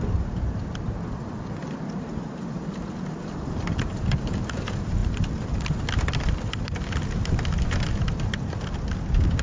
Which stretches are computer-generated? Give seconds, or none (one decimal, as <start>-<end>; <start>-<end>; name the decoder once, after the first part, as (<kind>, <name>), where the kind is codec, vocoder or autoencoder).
1.6-3.8 (vocoder, BigVGAN v2); 5.0-5.9